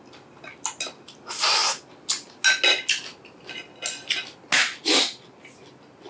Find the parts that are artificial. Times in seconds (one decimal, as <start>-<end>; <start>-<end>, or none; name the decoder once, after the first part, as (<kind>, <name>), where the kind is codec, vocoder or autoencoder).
none